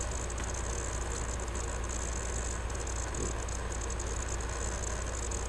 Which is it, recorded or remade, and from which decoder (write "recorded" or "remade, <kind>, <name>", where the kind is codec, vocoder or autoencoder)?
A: recorded